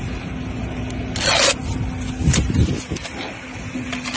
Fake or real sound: real